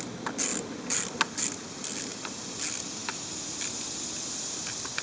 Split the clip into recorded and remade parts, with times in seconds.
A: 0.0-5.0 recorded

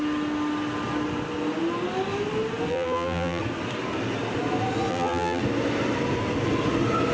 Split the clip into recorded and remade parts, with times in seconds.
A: 0.0-2.7 recorded; 2.7-3.4 remade; 3.4-4.9 recorded; 4.9-5.4 remade; 5.4-7.1 recorded